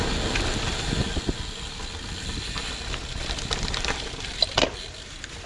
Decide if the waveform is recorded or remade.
recorded